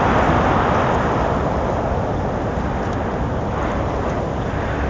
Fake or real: real